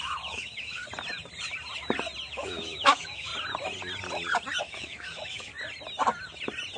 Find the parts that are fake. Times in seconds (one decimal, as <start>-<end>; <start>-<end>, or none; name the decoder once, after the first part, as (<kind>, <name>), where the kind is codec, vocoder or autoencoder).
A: 0.0-0.8 (autoencoder, DAC-VAE); 2.3-3.3; 4.6-5.5